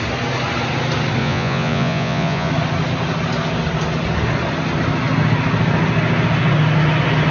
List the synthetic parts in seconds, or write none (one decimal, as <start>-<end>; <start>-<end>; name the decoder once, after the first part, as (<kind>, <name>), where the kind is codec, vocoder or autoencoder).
1.2-2.5 (vocoder, Vocos)